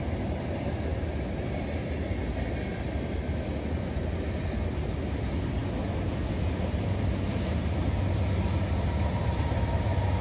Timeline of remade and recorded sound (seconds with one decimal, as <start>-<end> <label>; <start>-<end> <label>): 0.0-10.2 recorded